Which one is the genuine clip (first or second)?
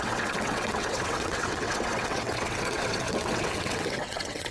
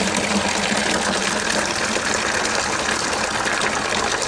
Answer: second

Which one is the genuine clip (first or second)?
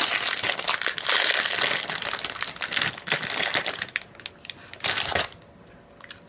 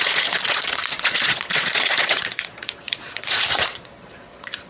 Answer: first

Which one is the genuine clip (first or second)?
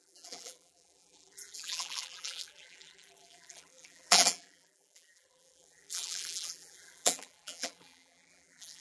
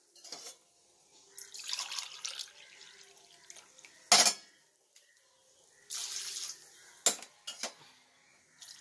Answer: second